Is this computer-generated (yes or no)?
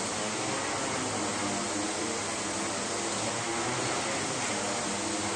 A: no